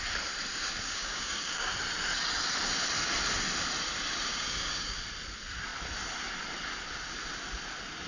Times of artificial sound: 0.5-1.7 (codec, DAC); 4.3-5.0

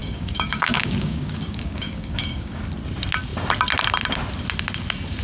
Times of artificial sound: 0.0-2.6 (codec, DAC)

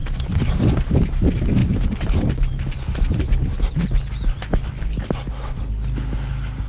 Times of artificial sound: none

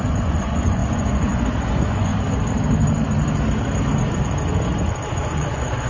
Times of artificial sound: 0.0-2.1 (vocoder, Vocos); 5.1-5.9